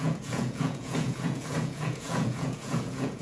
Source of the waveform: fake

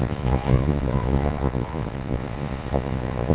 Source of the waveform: fake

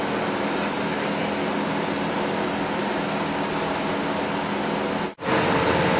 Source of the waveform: real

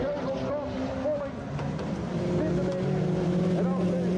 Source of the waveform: real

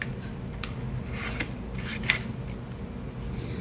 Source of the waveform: real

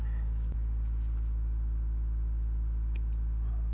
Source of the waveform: real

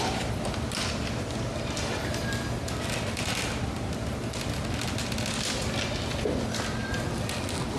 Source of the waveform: real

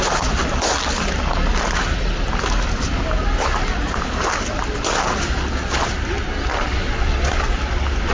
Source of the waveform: real